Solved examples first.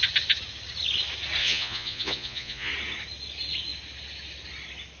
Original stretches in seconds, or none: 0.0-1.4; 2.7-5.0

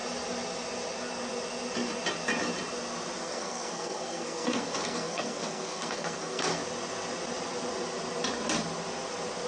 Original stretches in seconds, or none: 0.0-3.2; 6.6-9.5

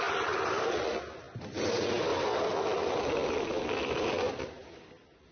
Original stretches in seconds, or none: 0.0-5.3

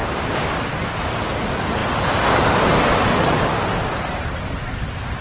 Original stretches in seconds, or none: 0.0-5.2

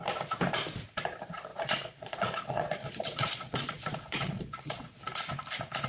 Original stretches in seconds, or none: 0.0-1.5; 5.0-5.9

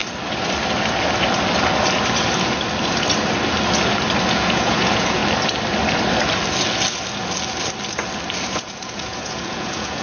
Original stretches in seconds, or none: 0.0-4.3; 5.2-8.5